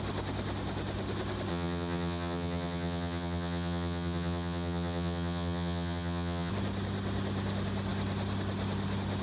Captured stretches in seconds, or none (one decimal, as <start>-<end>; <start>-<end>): 0.0-1.5; 6.5-9.2

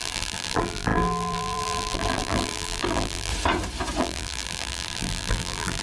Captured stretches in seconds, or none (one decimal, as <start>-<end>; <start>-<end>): 3.3-4.0

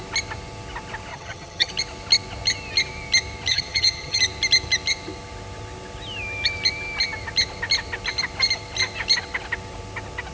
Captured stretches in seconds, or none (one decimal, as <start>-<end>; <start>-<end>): 0.0-1.1; 1.7-3.5; 4.2-10.3

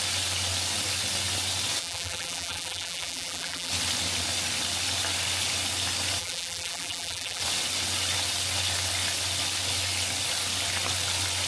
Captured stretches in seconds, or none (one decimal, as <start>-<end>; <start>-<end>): 0.0-1.8; 3.7-6.2; 7.4-11.5